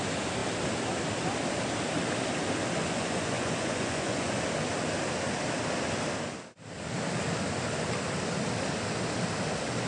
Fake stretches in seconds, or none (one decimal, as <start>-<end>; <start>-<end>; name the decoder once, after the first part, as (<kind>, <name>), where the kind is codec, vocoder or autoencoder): 2.8-4.4 (vocoder, Vocos)